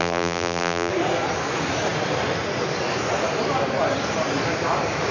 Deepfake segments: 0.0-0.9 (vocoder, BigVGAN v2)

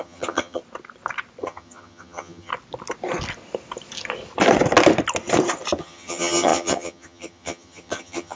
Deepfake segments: 0.0-0.6 (vocoder, HiFi-GAN); 1.4-2.5; 5.8-8.4

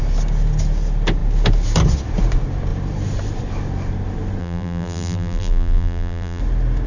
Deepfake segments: 4.4-6.4 (vocoder, BigVGAN v2)

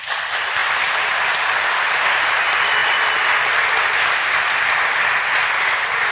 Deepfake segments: none

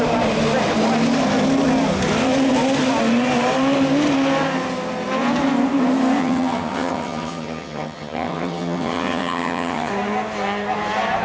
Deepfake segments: 6.2-9.9 (vocoder, HiFi-GAN)

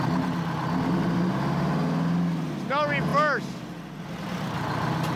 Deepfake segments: none